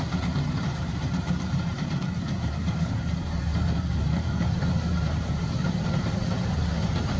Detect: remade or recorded remade